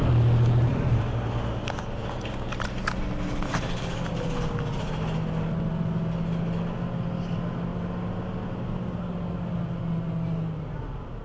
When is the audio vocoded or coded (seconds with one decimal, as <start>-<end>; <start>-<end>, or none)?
none